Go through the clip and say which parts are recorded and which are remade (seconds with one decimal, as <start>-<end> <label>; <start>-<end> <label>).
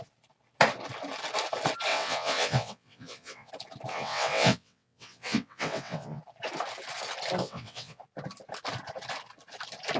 0.0-1.9 recorded; 1.9-3.5 remade; 3.5-3.9 recorded; 3.9-6.2 remade; 6.2-7.4 recorded; 7.4-8.0 remade; 8.0-10.0 recorded